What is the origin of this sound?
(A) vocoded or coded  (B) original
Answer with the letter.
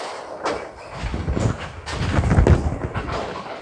B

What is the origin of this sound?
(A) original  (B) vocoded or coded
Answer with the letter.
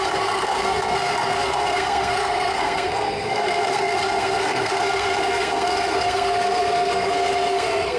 B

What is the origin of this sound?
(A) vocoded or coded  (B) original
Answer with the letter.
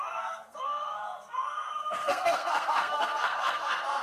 A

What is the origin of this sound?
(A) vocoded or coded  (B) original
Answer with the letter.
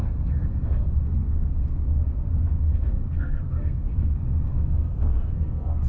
A